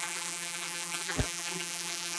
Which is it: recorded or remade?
remade